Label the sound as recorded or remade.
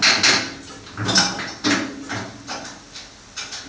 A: recorded